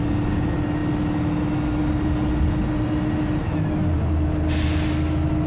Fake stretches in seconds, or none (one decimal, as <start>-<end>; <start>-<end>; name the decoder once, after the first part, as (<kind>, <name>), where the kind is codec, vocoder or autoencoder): none